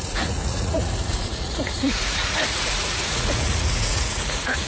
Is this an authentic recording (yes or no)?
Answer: no